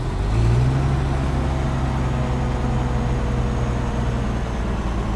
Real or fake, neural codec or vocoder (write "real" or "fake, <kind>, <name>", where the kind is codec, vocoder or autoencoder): real